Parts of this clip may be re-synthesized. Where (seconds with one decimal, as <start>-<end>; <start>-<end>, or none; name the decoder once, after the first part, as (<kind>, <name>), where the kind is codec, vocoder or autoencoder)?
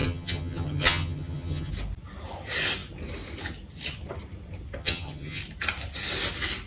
0.0-1.7 (vocoder, HiFi-GAN); 4.8-5.4